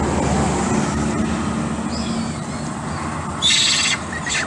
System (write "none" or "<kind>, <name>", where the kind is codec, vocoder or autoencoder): none